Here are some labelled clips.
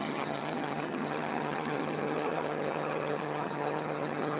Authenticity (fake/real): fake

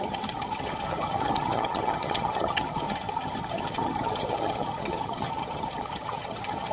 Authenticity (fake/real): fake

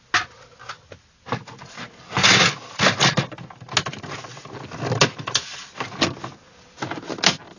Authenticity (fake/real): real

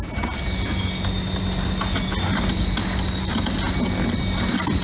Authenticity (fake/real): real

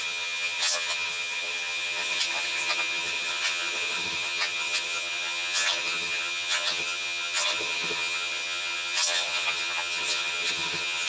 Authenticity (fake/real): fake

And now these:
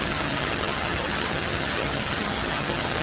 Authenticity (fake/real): fake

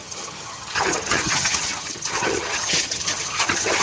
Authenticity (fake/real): fake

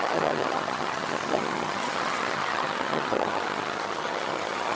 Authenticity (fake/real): fake